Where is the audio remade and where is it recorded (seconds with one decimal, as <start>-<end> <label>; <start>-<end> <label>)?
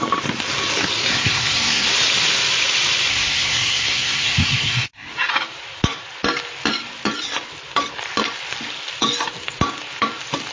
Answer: 0.0-1.1 recorded; 1.1-1.9 remade; 1.9-3.1 recorded; 3.1-5.1 remade; 5.1-10.5 recorded